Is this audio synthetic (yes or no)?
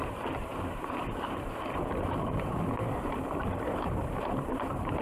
yes